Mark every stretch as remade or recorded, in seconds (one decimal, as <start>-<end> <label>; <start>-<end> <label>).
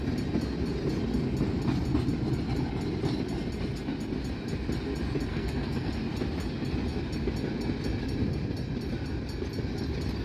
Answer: 0.0-5.3 recorded; 5.3-5.9 remade; 5.9-10.2 recorded